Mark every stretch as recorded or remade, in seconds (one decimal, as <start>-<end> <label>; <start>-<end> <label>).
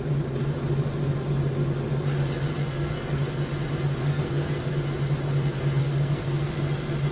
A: 0.0-2.6 recorded; 2.6-3.2 remade; 3.2-4.0 recorded; 4.0-4.7 remade; 4.7-5.8 recorded; 5.8-6.5 remade; 6.5-7.1 recorded